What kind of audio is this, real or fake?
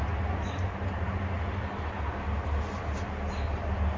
real